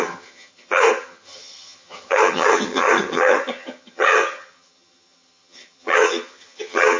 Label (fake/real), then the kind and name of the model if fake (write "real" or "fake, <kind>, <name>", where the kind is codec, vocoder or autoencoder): fake, vocoder, HiFi-GAN